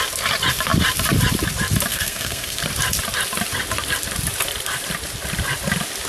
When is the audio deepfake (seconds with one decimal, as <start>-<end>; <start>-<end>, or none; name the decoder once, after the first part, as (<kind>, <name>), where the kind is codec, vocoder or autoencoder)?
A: 1.9-2.6 (codec, SNAC)